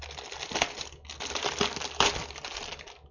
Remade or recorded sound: recorded